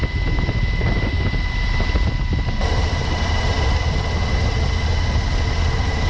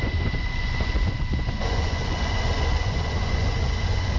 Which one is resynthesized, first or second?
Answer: second